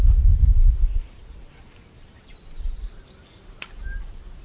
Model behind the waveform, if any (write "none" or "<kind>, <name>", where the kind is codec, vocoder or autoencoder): none